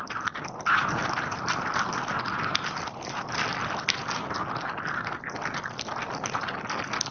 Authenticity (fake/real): real